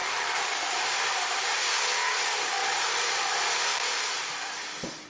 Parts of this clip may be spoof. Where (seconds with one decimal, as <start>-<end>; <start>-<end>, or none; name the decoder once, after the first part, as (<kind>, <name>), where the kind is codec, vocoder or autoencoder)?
0.0-1.6 (vocoder, BigVGAN v2); 2.6-3.3; 3.7-5.1